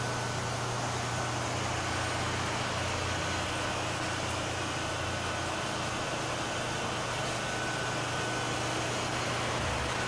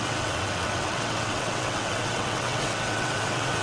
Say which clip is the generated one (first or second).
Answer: second